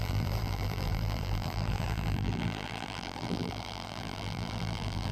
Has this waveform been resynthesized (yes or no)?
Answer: yes